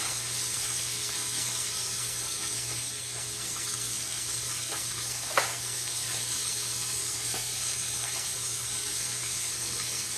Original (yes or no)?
no